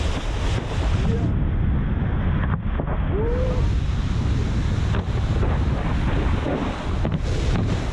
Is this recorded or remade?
recorded